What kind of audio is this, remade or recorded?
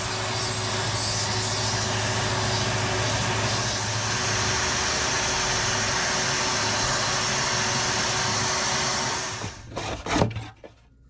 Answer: recorded